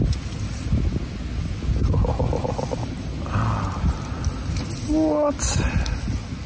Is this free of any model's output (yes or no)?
yes